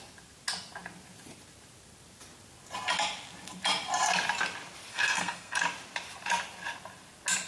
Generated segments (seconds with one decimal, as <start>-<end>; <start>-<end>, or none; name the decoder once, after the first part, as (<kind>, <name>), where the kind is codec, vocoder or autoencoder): 4.9-5.6 (codec, SNAC)